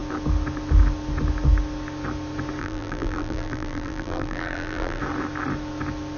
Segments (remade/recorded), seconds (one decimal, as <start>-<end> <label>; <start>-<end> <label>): 0.0-2.6 recorded; 2.6-5.0 remade; 5.0-6.2 recorded